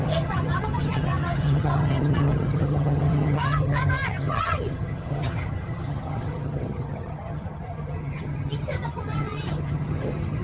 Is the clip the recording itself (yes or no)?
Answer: no